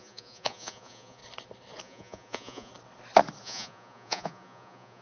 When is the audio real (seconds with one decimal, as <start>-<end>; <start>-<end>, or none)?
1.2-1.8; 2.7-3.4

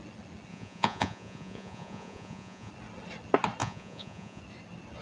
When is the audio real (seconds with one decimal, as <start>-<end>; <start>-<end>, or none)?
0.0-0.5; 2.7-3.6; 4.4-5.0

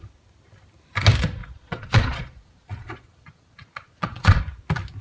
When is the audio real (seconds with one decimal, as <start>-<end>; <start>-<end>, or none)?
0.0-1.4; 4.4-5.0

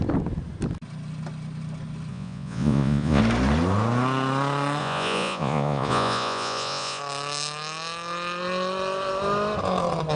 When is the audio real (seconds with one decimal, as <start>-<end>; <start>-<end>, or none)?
0.0-2.1; 3.2-4.8; 7.0-10.2

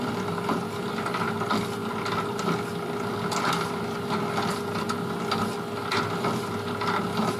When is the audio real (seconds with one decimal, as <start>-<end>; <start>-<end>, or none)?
0.0-7.4

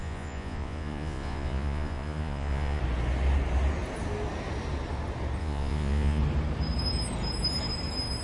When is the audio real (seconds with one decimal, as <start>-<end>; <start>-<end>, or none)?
2.8-5.4; 6.2-8.2